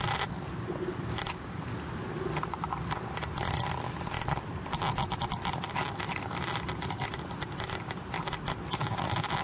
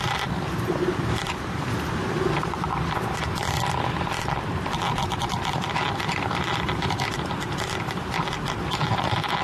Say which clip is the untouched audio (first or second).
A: first